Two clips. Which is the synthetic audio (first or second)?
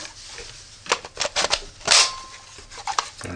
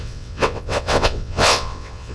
second